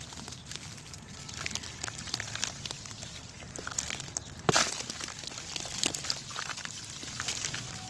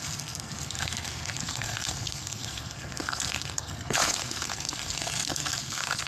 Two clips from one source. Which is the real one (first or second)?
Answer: first